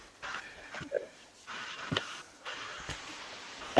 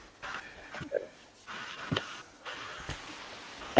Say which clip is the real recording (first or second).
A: second